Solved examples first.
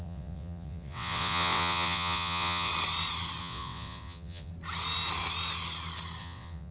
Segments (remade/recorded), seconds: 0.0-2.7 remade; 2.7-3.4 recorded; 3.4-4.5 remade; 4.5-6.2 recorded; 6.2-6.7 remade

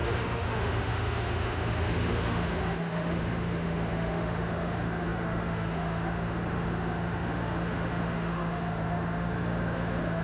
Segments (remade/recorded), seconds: 0.0-10.2 remade

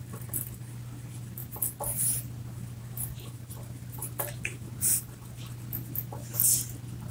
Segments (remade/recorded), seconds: 0.0-7.1 recorded

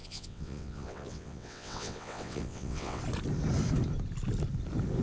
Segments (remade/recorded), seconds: 0.0-3.0 remade; 3.0-5.0 recorded

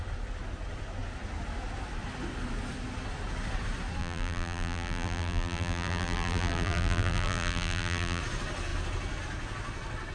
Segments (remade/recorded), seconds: 0.0-4.0 recorded; 4.0-8.2 remade; 8.2-10.1 recorded

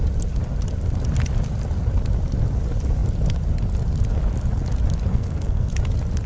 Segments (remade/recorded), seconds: 0.0-5.1 recorded; 5.1-5.7 remade; 5.7-6.3 recorded